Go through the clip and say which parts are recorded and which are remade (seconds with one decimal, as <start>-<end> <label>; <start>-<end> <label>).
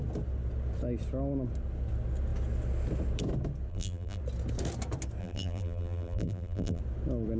0.0-3.7 recorded; 3.7-4.2 remade; 4.2-5.2 recorded; 5.2-6.8 remade; 6.8-7.4 recorded